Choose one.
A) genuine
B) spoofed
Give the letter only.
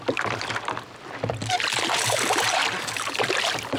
A